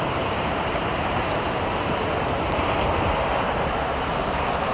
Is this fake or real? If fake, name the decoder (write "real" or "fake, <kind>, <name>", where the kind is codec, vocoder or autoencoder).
fake, vocoder, BigVGAN v2